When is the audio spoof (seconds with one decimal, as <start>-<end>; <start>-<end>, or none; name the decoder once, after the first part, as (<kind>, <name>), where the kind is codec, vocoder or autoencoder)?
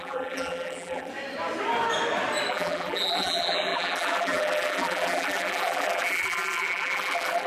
0.0-1.1 (vocoder, BigVGAN v2); 2.5-7.5